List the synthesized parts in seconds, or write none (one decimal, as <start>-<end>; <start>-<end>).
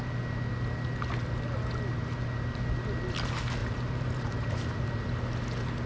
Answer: 3.6-5.1